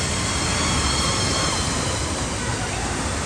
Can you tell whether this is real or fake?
real